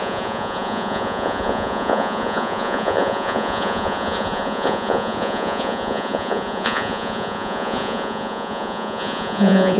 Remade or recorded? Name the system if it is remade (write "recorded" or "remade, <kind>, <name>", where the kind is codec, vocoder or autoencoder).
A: remade, vocoder, Vocos